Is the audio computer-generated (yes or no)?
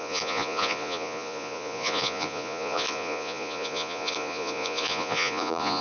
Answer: yes